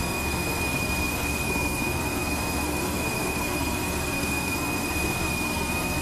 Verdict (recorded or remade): remade